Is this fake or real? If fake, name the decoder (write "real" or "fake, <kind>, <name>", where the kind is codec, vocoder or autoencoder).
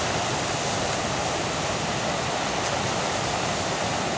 real